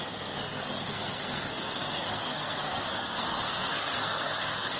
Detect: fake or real fake